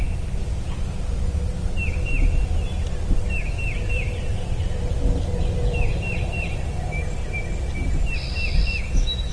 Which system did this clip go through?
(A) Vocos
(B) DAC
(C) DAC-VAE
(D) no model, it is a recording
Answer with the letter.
D